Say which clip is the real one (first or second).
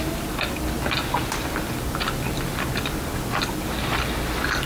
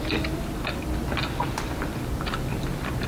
first